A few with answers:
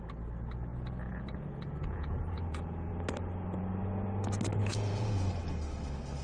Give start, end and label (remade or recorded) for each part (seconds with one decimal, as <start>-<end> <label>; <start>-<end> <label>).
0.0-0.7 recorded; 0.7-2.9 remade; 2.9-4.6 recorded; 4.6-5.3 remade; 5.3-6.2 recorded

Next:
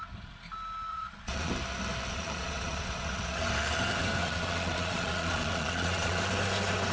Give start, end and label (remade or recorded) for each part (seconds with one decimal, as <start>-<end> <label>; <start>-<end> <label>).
0.0-0.9 recorded; 0.9-1.5 remade; 1.5-2.1 recorded; 2.1-3.5 remade; 3.5-4.2 recorded; 4.2-6.2 remade; 6.2-6.9 recorded

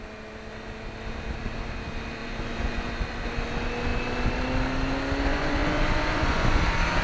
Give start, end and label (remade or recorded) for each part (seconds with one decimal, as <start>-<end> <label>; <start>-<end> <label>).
0.0-2.2 recorded; 2.2-2.9 remade; 2.9-5.3 recorded; 5.3-6.6 remade; 6.6-7.0 recorded

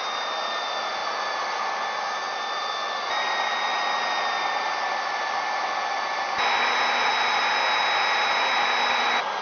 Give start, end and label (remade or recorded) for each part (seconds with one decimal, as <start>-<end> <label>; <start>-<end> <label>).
0.0-9.4 recorded

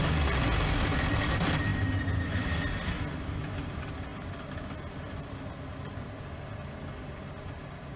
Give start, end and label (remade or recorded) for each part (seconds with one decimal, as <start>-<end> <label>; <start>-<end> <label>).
0.0-8.0 recorded

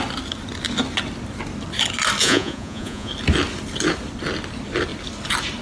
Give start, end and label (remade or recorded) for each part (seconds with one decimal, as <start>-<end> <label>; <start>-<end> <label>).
0.0-2.2 recorded; 2.2-3.1 remade; 3.1-5.6 recorded

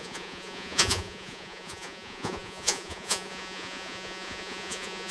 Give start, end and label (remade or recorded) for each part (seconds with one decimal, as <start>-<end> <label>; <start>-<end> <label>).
0.0-5.1 remade